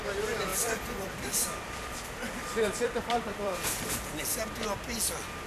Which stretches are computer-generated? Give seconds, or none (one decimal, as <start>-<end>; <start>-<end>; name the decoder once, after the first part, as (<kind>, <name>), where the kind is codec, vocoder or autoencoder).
0.5-3.8 (vocoder, BigVGAN v2)